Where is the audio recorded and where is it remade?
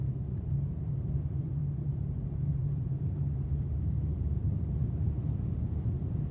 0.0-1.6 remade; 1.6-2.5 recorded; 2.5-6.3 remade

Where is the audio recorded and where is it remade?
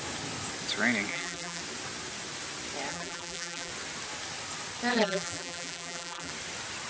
0.0-1.1 recorded; 1.1-1.6 remade; 1.6-2.9 recorded; 2.9-3.7 remade; 3.7-4.9 recorded; 4.9-6.3 remade; 6.3-6.9 recorded